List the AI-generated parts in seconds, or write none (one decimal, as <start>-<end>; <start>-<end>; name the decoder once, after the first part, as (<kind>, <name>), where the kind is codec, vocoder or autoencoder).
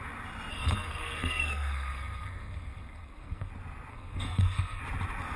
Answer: 0.5-3.5 (codec, SNAC); 3.9-4.8